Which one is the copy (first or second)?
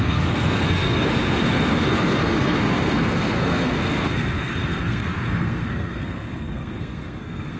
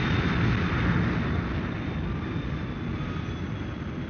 first